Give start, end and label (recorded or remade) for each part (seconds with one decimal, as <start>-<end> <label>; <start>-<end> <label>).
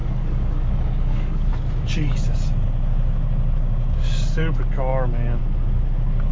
0.0-1.5 remade; 1.5-6.3 recorded